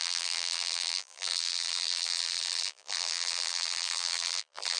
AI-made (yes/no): yes